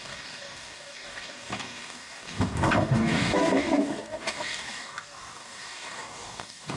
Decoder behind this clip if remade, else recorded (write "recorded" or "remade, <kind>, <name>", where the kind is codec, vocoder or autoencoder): remade, codec, DAC